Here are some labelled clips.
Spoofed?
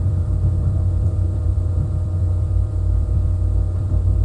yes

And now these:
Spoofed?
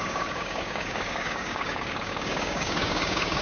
yes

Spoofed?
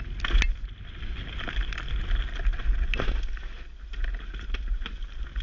no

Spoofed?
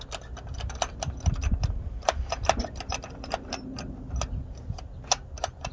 no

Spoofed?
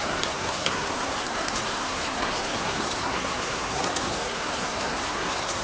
yes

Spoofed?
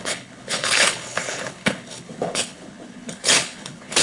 yes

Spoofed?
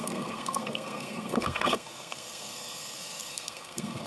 yes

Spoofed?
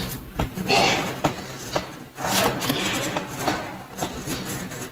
no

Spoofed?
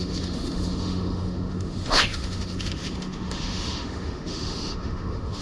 yes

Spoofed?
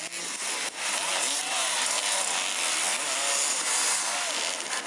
no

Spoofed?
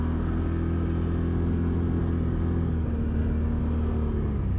no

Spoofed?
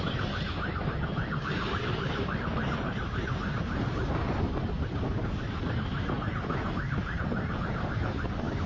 yes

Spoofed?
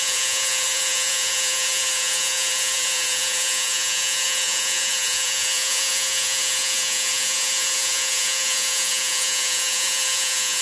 yes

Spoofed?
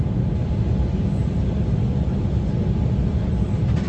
no